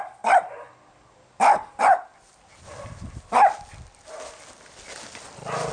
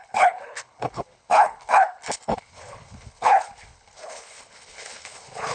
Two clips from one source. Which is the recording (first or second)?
first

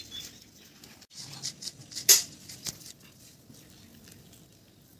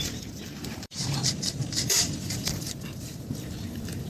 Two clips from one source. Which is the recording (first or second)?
first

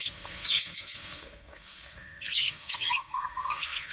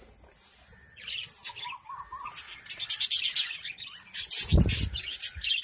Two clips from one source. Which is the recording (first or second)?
second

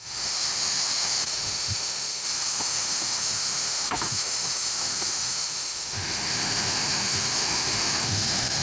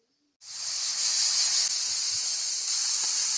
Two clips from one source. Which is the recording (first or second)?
second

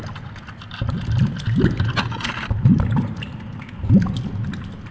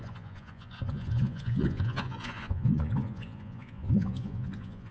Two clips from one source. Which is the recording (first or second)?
first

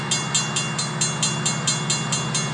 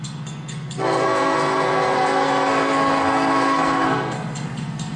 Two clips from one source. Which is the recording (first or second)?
first